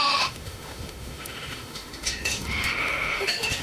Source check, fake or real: fake